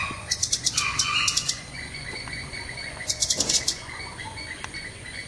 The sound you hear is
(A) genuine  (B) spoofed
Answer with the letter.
B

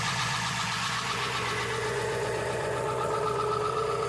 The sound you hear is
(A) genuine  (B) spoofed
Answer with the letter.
B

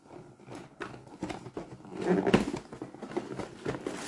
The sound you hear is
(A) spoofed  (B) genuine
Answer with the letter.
B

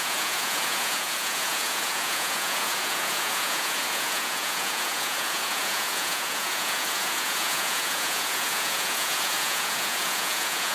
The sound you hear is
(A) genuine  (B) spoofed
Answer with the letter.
B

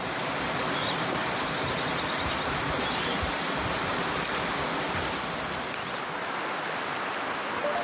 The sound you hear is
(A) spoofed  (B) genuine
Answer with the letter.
B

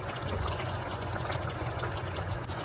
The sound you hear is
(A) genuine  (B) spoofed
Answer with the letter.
B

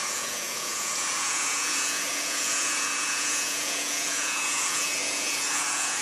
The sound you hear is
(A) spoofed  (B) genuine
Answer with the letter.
A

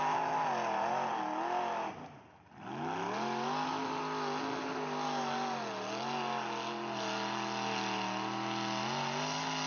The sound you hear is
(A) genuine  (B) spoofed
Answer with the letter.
A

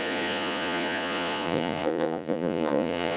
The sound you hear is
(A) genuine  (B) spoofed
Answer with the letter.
B